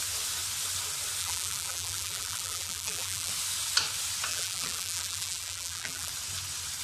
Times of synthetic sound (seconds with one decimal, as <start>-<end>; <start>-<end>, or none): 1.2-3.3; 4.3-6.1